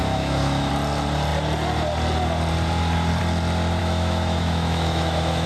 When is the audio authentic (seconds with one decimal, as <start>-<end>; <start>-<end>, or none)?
0.7-3.8